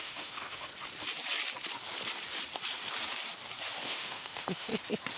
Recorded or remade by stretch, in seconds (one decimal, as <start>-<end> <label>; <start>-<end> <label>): 0.0-0.7 remade; 0.7-3.8 recorded; 3.8-4.7 remade; 4.7-5.2 recorded